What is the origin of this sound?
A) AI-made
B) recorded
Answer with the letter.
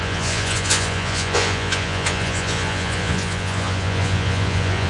A